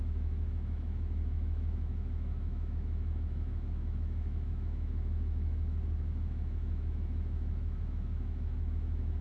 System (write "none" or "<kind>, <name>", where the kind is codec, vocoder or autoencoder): autoencoder, DAC-VAE